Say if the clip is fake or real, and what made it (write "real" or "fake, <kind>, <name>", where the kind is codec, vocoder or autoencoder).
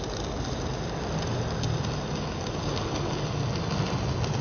real